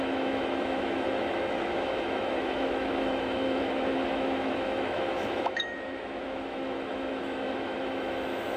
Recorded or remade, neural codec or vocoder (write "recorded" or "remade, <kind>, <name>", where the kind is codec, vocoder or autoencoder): remade, autoencoder, DAC-VAE